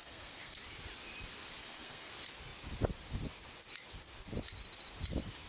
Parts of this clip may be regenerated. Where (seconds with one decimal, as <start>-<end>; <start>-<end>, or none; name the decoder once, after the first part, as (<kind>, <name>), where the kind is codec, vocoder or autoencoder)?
0.0-0.6 (codec, SNAC); 1.6-2.1